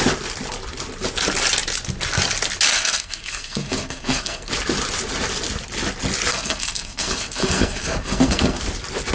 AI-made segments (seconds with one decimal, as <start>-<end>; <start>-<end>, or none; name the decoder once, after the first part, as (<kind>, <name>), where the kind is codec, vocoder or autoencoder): 2.7-4.5 (codec, SNAC); 6.3-8.6